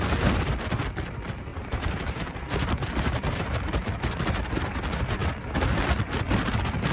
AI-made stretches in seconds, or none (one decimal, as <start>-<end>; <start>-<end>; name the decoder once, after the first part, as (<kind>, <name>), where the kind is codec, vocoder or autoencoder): 1.5-4.1 (vocoder, BigVGAN v2)